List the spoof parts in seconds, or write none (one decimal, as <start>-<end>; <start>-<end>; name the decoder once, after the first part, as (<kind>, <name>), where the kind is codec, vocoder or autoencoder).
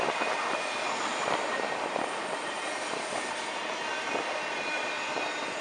1.1-3.8 (vocoder, BigVGAN v2)